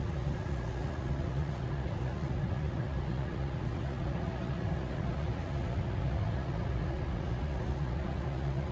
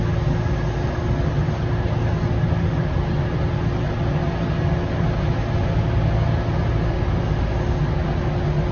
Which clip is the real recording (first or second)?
second